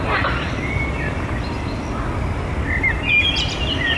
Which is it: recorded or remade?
recorded